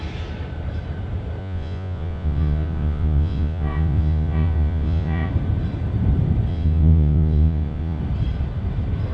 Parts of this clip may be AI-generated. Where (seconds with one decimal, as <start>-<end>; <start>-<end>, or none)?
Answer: 1.4-5.3; 6.5-8.0